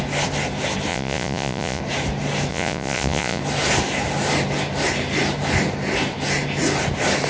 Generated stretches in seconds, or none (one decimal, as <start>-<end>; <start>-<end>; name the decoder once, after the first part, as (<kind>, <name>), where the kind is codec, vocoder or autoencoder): 0.9-1.8 (vocoder, Vocos); 2.5-3.4